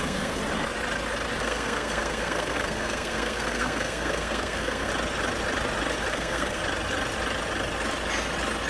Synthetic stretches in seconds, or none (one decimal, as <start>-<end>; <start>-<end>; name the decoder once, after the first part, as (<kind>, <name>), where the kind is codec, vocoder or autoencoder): 0.0-0.4 (codec, SNAC); 1.4-4.9; 6.1-6.6